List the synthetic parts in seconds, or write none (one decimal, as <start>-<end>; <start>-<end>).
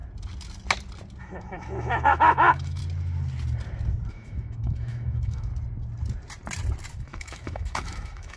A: 1.2-2.8; 4.1-5.5; 7.0-8.4